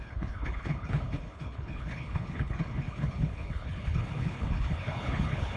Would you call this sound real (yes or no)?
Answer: no